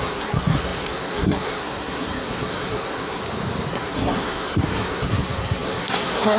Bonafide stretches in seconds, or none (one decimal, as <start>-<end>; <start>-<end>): 3.2-3.7

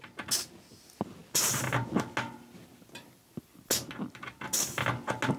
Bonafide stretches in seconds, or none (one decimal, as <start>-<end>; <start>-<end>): 0.0-5.4

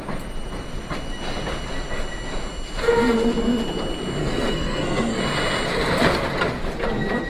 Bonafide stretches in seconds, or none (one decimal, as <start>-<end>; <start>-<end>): 0.0-4.2; 5.2-7.3

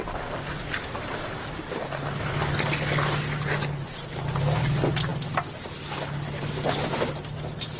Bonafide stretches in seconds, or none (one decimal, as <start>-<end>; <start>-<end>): 0.0-7.8

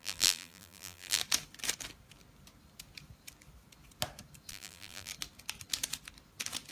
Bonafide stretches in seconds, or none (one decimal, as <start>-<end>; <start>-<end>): 1.2-4.5; 5.1-6.7